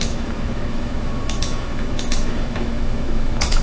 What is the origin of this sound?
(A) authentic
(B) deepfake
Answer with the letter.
B